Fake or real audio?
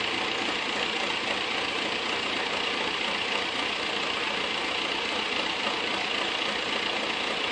real